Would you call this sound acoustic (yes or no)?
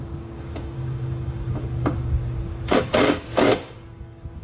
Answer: no